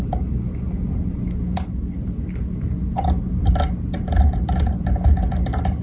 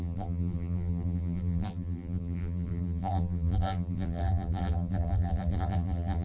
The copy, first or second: second